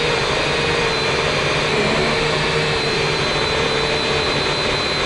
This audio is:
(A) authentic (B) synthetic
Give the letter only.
B